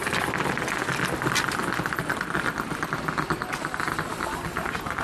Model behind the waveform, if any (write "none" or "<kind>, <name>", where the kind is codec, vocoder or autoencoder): none